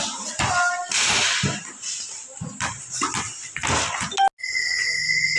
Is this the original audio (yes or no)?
yes